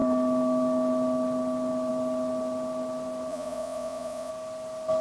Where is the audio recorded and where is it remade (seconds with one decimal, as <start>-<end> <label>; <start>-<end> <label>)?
0.0-3.3 recorded; 3.3-4.3 remade; 4.3-5.0 recorded